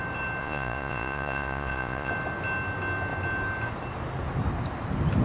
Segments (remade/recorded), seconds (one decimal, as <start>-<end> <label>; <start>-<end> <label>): 0.0-0.4 recorded; 0.4-2.1 remade; 2.1-5.2 recorded